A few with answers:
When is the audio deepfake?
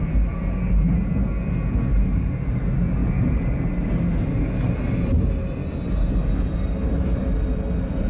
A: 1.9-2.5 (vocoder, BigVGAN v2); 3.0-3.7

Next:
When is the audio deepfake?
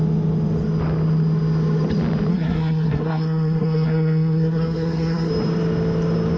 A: 2.3-5.3 (codec, SNAC)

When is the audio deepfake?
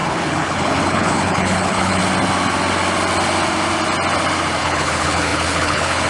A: 0.0-2.0 (codec, HILCodec); 4.6-6.1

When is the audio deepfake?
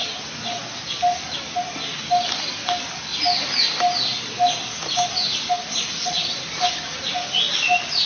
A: none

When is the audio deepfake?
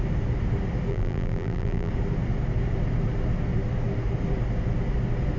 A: 0.9-1.9 (vocoder, BigVGAN v2)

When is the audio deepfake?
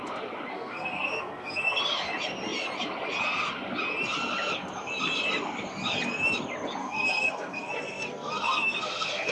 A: 0.5-1.8 (codec, SNAC); 6.8-9.3